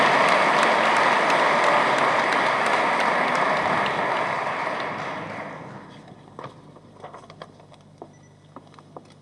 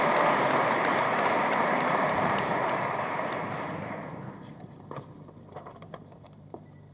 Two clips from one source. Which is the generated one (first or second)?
second